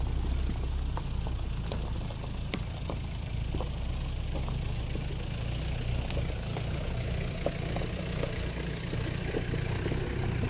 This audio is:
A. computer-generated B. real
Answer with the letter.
B